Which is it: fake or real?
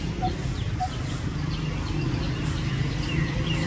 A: real